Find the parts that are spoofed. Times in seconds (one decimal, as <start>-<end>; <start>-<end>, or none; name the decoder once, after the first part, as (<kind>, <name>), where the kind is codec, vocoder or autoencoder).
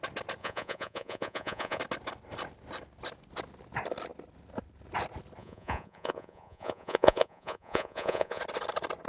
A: 0.4-1.8 (vocoder, Vocos); 5.4-8.4